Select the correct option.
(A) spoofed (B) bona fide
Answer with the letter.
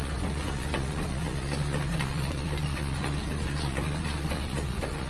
A